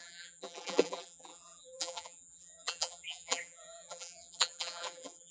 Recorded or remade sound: remade